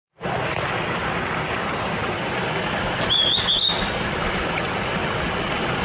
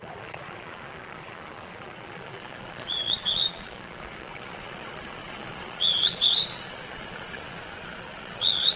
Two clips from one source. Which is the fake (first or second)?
second